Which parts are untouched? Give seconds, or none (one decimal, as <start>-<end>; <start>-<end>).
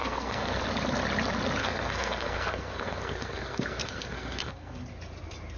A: 0.6-1.6; 4.8-5.6